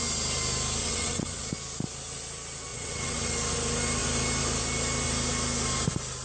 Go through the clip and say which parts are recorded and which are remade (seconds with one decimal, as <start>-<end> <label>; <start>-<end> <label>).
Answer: 0.0-0.8 recorded; 0.8-1.4 remade; 1.4-2.7 recorded; 2.7-3.3 remade; 3.3-6.2 recorded